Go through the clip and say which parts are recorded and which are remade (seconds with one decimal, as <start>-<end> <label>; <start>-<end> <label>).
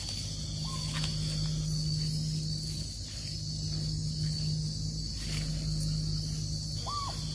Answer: 0.0-7.3 recorded